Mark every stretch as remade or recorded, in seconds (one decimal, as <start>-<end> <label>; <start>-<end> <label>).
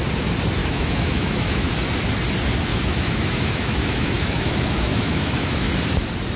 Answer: 0.0-0.6 recorded; 0.6-1.7 remade; 1.7-2.7 recorded; 2.7-5.7 remade; 5.7-6.4 recorded